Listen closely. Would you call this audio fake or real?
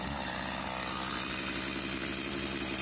real